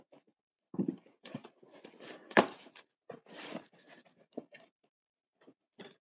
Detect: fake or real fake